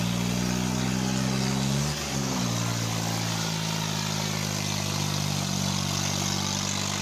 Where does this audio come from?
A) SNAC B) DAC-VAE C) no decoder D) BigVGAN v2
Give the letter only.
C